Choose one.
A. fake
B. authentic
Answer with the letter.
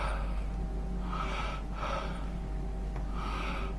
B